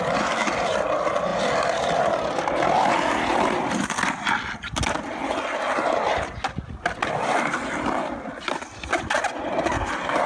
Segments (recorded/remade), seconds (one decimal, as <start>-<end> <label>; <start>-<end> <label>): 0.0-10.3 recorded